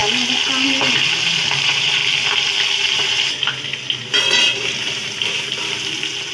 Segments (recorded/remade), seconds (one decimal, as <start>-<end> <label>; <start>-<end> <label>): 0.0-1.5 recorded; 1.5-2.0 remade; 2.0-2.8 recorded; 2.8-3.7 remade; 3.7-4.8 recorded; 4.8-6.3 remade